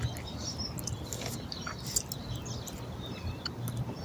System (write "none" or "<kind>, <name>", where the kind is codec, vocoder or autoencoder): none